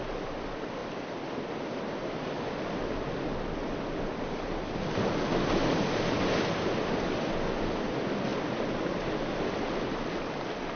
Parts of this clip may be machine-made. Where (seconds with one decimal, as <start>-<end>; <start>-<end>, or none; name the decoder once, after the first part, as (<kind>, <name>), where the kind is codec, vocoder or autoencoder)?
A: none